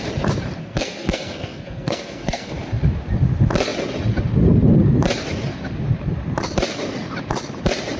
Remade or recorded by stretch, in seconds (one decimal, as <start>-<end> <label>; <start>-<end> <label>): 0.0-0.6 recorded; 0.6-2.5 remade; 2.5-8.0 recorded